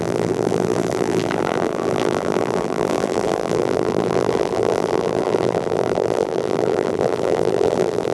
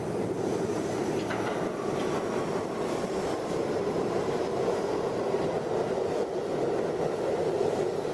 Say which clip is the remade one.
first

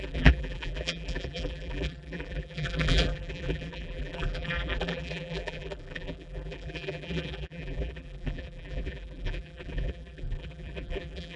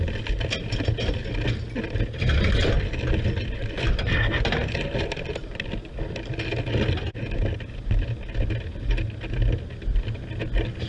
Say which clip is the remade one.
first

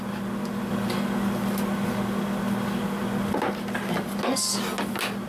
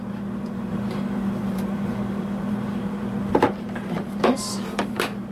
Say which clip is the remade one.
second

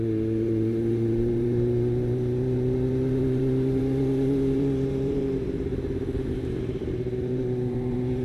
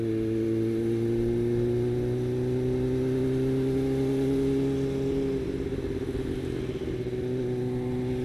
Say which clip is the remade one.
first